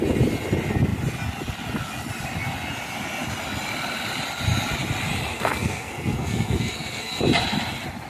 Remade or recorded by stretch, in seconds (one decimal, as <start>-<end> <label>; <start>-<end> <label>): 0.0-5.3 recorded; 5.3-7.2 remade; 7.2-8.1 recorded